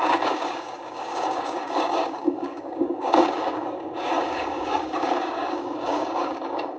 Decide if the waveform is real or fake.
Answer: fake